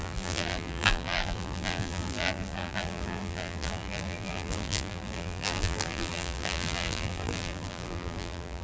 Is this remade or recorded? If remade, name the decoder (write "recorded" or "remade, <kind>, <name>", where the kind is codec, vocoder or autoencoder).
remade, vocoder, BigVGAN v2